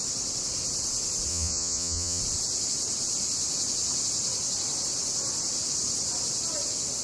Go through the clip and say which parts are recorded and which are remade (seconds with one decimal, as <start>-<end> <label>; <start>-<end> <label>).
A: 0.0-1.3 recorded; 1.3-2.2 remade; 2.2-7.0 recorded